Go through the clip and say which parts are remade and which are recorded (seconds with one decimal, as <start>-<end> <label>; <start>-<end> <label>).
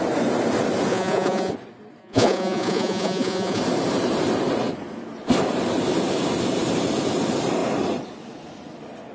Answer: 0.0-0.9 recorded; 0.9-1.5 remade; 1.5-2.0 recorded; 2.0-3.6 remade; 3.6-9.1 recorded